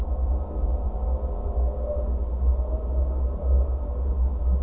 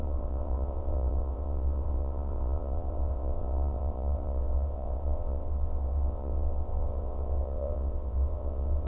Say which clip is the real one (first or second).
first